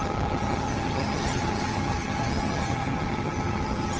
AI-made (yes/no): yes